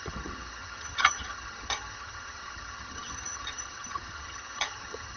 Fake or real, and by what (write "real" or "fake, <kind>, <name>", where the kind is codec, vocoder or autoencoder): fake, vocoder, HiFi-GAN